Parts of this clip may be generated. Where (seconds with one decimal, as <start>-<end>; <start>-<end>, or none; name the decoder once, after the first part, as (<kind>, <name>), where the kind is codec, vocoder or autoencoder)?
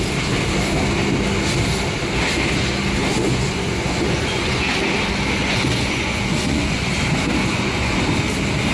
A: 3.1-4.8 (vocoder, Vocos); 5.4-6.9; 7.4-8.0